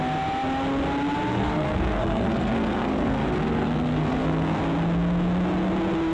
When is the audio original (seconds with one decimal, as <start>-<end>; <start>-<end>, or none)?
0.0-1.3; 4.6-6.1